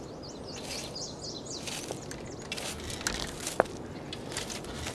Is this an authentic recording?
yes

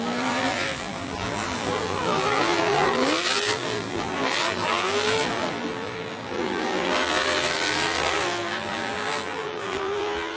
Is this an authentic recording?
no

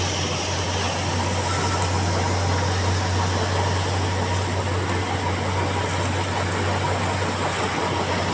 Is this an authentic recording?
yes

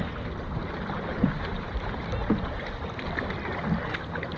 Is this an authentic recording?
yes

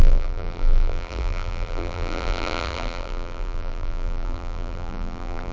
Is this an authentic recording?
no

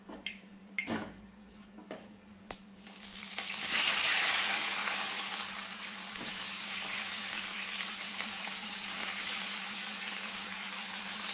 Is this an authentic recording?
no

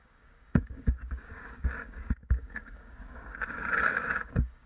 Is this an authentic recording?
no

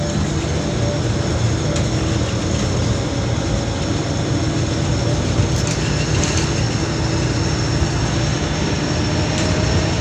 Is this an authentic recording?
yes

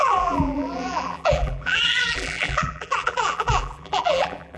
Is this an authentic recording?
no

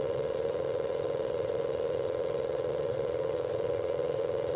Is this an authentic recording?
no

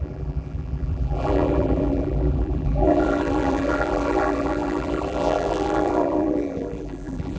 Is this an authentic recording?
no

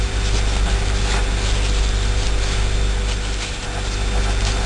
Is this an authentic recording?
yes